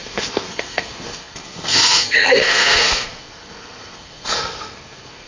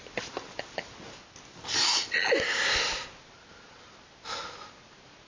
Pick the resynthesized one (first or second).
first